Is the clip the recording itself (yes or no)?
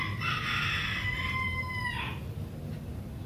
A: yes